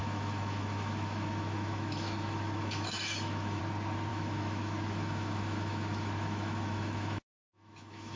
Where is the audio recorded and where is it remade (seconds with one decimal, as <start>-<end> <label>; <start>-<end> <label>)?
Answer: 0.0-3.6 remade; 3.6-4.1 recorded; 4.1-8.2 remade